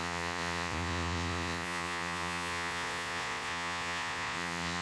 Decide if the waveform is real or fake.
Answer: fake